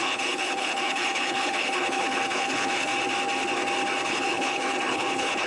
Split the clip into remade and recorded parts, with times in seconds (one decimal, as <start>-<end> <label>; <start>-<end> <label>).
0.0-2.9 remade; 2.9-4.1 recorded; 4.1-5.5 remade